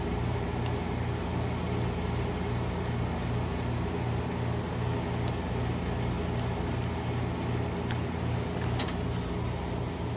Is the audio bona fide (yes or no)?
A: yes